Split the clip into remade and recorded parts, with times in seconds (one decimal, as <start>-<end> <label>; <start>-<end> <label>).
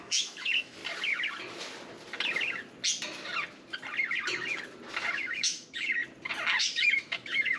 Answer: 0.0-0.8 remade; 0.8-5.1 recorded; 5.1-6.0 remade; 6.0-6.6 recorded; 6.6-7.6 remade